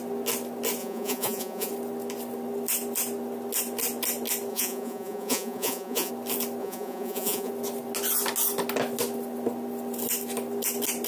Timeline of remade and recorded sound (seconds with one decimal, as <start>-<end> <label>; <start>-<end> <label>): 0.0-0.8 recorded; 0.8-1.7 remade; 1.7-4.5 recorded; 4.5-6.1 remade; 6.1-6.6 recorded; 6.6-7.5 remade; 7.5-11.1 recorded